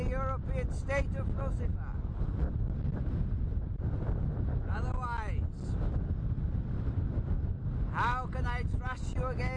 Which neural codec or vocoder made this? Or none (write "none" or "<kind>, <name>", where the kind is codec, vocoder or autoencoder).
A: none